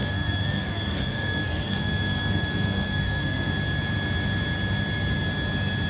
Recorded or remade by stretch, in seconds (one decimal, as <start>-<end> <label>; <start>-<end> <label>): 0.0-3.5 remade; 3.5-5.9 recorded